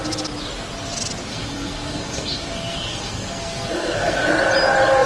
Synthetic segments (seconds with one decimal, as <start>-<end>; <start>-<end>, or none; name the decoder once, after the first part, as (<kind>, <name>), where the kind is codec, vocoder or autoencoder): 1.3-4.3 (codec, SNAC)